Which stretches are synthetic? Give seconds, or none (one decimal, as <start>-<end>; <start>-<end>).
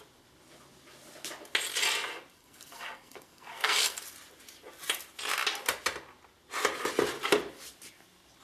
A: 2.3-4.0